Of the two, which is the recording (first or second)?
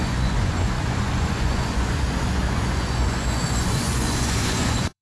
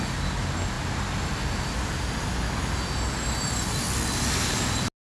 second